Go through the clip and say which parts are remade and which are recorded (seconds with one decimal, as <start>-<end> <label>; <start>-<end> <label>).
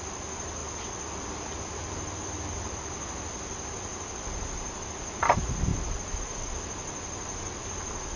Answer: 0.0-8.2 recorded